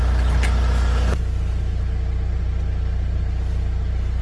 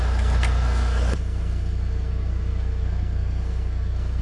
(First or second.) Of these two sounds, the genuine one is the first